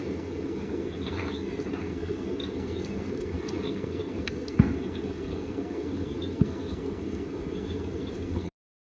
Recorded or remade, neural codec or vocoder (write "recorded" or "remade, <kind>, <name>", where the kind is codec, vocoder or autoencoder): remade, codec, SNAC